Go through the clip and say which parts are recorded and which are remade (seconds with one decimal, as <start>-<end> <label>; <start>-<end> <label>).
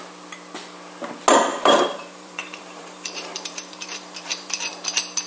0.0-1.5 recorded; 1.5-4.7 remade; 4.7-5.3 recorded